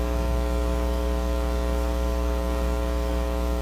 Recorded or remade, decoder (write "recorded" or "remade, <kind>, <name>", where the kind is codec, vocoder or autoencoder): remade, codec, DAC